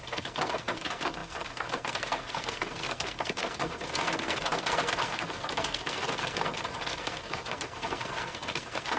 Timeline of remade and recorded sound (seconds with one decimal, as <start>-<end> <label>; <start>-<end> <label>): 0.0-9.0 remade